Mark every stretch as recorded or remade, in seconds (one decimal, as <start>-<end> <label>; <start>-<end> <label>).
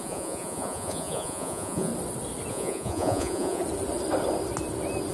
0.0-1.9 remade; 1.9-2.5 recorded; 2.5-3.6 remade; 3.6-5.1 recorded